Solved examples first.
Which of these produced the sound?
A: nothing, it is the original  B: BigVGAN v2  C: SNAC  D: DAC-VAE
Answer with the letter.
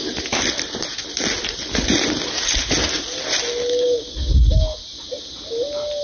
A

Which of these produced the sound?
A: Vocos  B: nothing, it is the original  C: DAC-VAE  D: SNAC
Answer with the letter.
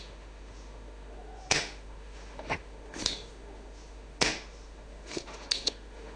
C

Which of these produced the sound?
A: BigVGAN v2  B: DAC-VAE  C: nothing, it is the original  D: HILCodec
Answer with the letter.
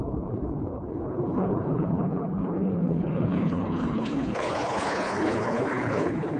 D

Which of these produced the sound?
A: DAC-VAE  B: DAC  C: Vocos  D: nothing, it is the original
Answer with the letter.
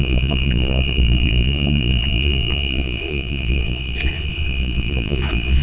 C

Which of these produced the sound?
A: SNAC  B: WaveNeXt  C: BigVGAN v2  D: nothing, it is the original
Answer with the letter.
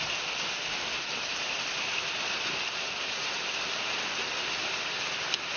D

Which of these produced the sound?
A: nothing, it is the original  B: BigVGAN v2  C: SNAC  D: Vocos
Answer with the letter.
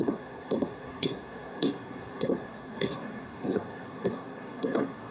C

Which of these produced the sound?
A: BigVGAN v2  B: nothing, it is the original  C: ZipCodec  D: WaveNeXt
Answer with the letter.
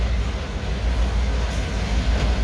B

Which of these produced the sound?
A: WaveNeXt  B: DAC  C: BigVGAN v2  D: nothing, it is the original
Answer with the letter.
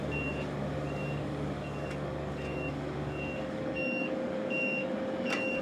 B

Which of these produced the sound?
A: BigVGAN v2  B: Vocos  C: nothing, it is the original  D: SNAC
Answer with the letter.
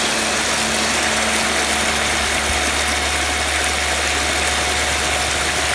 C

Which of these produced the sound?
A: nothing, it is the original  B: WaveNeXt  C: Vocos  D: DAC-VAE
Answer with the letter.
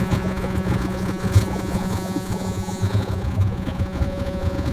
C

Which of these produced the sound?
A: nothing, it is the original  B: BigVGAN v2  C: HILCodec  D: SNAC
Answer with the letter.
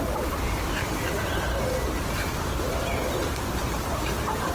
A